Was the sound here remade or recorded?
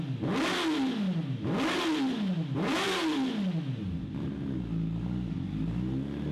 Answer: recorded